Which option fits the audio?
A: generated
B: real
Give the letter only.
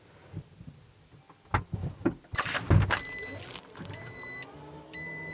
B